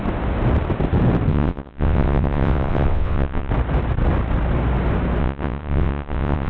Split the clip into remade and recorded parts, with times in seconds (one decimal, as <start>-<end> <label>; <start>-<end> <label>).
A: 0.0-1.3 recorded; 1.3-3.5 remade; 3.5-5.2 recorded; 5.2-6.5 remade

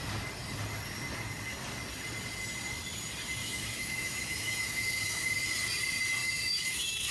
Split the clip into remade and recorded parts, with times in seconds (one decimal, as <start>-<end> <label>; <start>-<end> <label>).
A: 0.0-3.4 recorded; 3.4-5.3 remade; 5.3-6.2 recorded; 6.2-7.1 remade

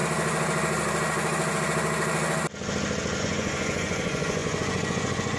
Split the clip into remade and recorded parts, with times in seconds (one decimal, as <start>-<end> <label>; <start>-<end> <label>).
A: 0.0-3.2 recorded; 3.2-5.4 remade

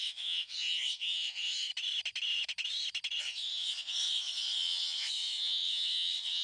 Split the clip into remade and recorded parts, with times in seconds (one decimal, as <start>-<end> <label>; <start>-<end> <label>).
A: 0.0-1.7 remade; 1.7-3.2 recorded; 3.2-6.4 remade

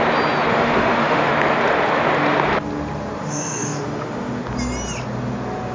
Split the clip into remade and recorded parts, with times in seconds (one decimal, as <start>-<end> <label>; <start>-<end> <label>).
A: 0.0-0.5 recorded; 0.5-1.3 remade; 1.3-3.2 recorded; 3.2-4.4 remade; 4.4-5.7 recorded